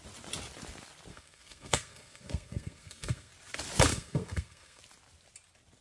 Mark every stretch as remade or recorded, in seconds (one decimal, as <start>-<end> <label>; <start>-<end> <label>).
0.0-1.1 recorded; 1.1-3.3 remade; 3.3-3.9 recorded; 3.9-4.8 remade; 4.8-5.8 recorded